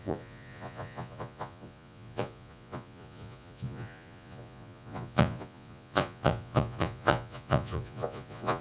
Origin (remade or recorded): remade